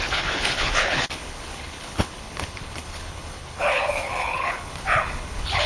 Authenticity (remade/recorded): remade